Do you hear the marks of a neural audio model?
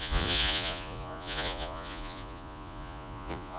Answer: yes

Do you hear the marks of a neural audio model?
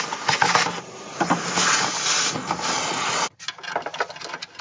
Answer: no